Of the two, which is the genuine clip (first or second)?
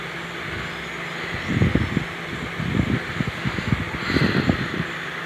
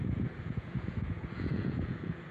first